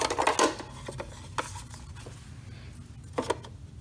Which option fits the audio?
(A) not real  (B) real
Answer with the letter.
B